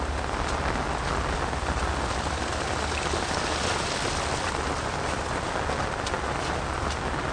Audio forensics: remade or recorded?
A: recorded